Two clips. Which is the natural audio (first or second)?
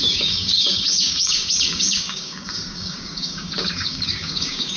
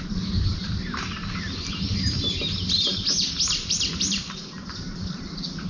second